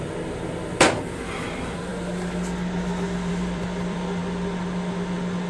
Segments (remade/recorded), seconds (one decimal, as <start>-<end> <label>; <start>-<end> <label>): 0.0-1.9 remade; 1.9-3.3 recorded; 3.3-4.2 remade; 4.2-5.5 recorded